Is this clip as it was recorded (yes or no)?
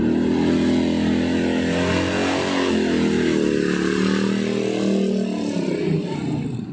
yes